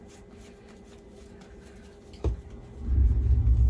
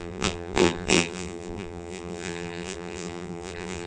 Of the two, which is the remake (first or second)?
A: second